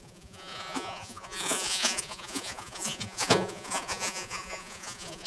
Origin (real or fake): fake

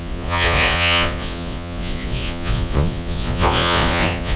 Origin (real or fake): fake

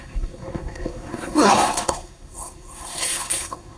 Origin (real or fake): fake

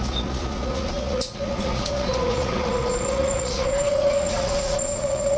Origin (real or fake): fake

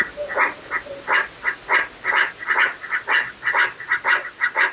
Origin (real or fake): real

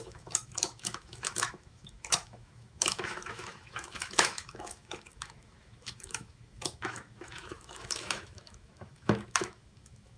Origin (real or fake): fake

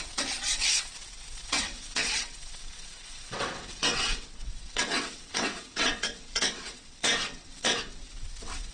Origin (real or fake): fake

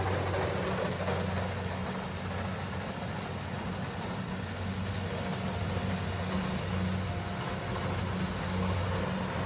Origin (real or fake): real